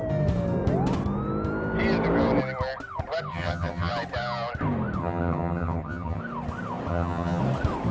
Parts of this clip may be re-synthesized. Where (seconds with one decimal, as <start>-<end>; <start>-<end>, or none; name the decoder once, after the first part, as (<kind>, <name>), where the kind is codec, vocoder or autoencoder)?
3.3-3.9 (vocoder, HiFi-GAN); 5.0-6.2; 6.9-7.4